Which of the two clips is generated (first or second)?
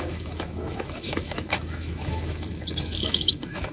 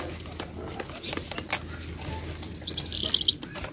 first